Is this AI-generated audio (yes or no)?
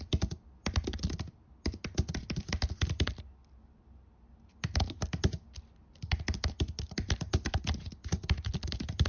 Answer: no